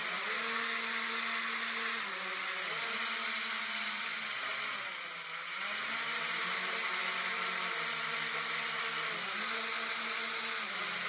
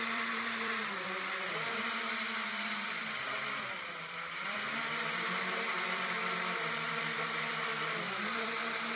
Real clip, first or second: first